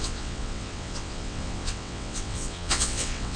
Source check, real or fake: fake